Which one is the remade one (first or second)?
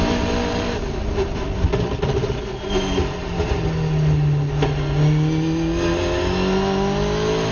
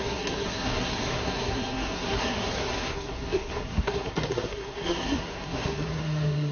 second